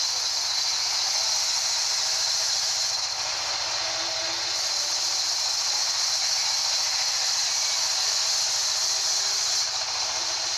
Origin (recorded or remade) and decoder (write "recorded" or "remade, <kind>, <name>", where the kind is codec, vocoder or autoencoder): recorded